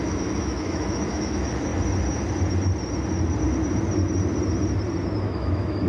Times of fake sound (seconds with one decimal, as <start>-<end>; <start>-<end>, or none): 0.0-1.7; 5.2-5.9